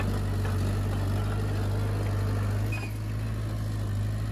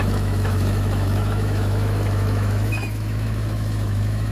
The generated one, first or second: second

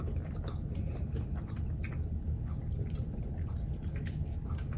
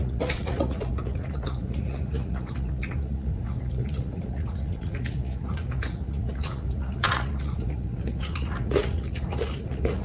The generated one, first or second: second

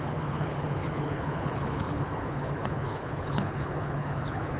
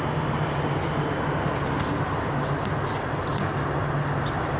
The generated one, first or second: first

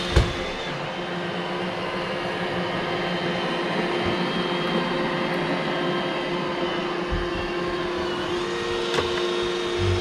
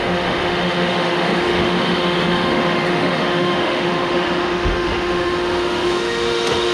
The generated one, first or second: second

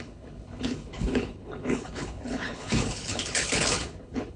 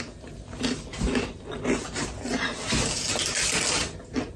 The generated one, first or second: first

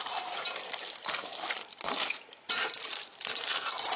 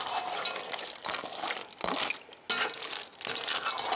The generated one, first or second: first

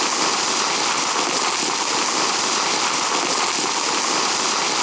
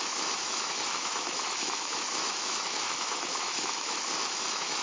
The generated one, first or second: second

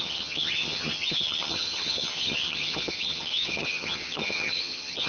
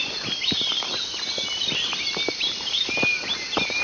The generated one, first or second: first